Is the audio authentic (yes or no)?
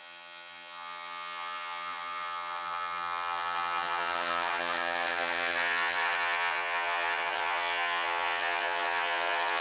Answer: no